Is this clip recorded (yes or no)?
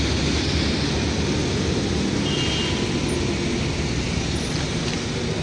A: yes